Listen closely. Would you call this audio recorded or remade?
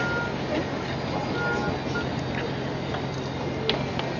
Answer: recorded